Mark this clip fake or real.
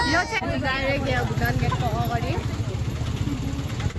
real